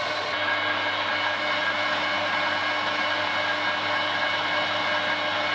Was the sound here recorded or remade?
recorded